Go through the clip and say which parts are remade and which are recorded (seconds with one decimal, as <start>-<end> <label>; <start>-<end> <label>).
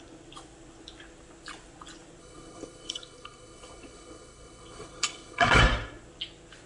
0.0-2.2 recorded; 2.2-5.6 remade; 5.6-6.7 recorded